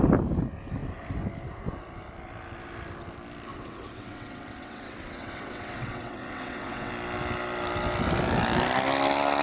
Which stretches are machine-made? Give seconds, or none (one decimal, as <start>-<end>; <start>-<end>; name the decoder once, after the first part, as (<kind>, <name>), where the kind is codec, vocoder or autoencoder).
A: 3.5-6.9 (vocoder, WaveNeXt)